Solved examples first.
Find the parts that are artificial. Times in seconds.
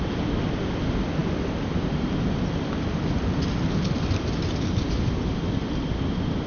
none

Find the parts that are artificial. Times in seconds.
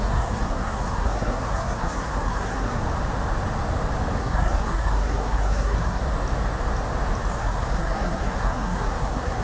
0.0-2.8 (codec, SNAC); 4.2-6.0; 7.4-9.4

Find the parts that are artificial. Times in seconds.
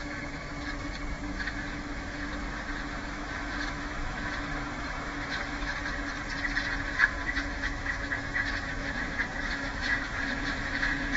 0.0-0.5 (autoencoder, DAC-VAE); 1.2-2.3; 2.8-5.7; 6.9-11.2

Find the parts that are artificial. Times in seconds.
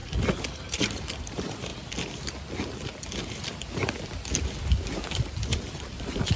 0.5-1.7 (vocoder, BigVGAN v2); 4.6-6.4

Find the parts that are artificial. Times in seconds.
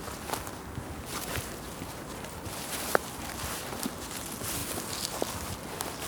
1.1-3.3 (vocoder, BigVGAN v2)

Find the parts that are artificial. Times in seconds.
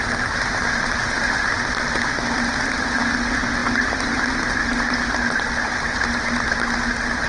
none